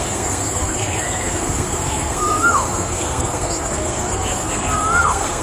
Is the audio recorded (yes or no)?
no